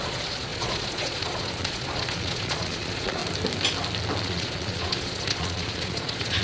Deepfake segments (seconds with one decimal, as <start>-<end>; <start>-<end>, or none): 0.0-3.2; 4.2-6.4